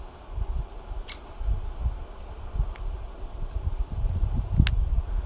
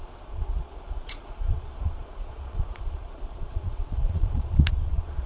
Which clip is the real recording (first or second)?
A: first